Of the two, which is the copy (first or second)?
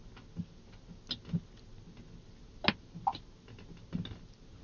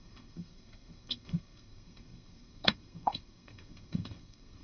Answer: second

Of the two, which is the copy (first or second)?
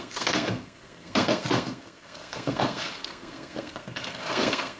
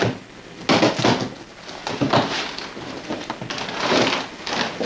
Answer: first